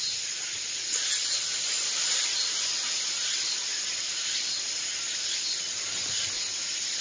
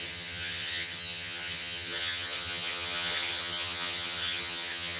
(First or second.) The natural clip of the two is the first